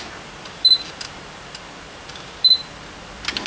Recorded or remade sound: recorded